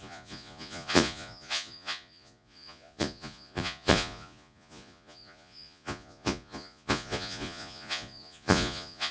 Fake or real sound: fake